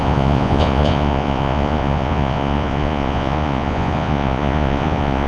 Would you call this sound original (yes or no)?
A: no